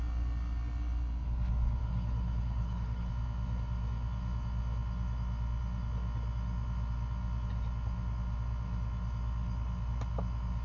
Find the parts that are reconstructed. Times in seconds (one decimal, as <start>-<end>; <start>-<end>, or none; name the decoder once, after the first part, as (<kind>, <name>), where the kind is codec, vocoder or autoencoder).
1.8-3.1 (codec, HILCodec)